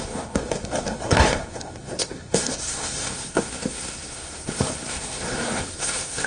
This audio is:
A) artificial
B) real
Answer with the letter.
A